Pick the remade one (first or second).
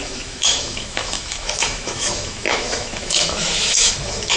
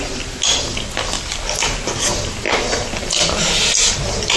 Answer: first